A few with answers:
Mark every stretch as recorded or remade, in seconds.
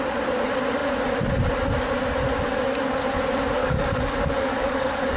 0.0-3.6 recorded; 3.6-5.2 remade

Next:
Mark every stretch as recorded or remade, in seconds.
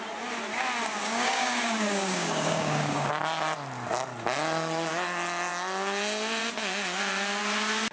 0.0-1.0 recorded; 1.0-3.1 remade; 3.1-7.9 recorded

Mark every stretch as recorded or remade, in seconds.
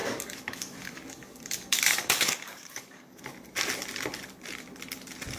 0.0-3.2 remade; 3.2-5.4 recorded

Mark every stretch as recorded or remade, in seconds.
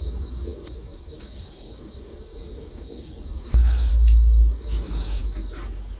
0.0-6.0 remade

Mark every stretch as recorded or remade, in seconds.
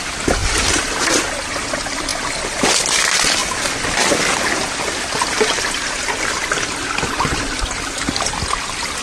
0.0-9.0 recorded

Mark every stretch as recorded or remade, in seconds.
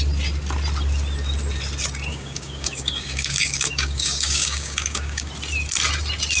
0.0-2.1 recorded; 2.1-5.3 remade; 5.3-6.4 recorded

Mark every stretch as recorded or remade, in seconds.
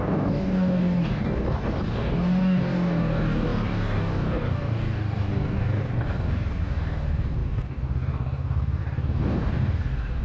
0.0-10.2 remade